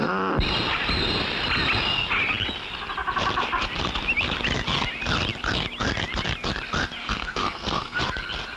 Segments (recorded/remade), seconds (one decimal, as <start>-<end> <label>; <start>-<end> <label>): 0.0-7.0 recorded; 7.0-8.0 remade; 8.0-8.6 recorded